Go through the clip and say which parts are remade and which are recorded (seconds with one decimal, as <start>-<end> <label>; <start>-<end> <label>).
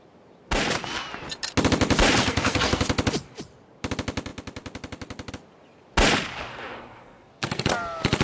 0.0-2.2 recorded; 2.2-2.8 remade; 2.8-6.5 recorded; 6.5-7.6 remade; 7.6-8.2 recorded